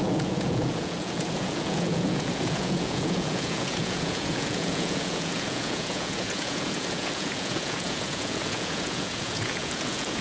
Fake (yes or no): yes